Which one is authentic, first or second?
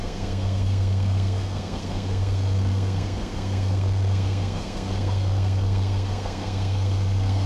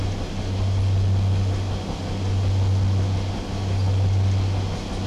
second